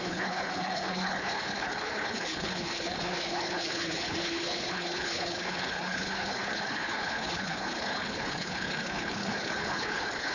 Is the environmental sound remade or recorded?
remade